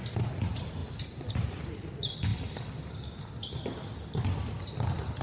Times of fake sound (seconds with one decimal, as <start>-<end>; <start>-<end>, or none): none